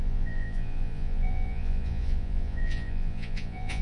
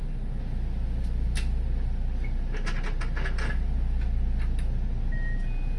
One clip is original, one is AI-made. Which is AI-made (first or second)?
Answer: first